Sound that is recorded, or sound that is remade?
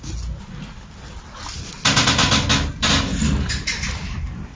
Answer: recorded